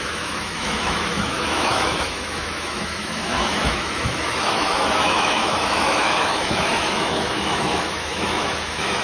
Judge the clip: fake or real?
fake